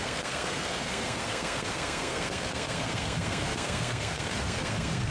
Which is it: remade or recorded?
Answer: remade